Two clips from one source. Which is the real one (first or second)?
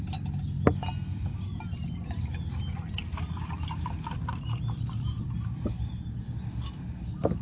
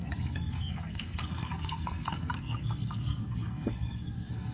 first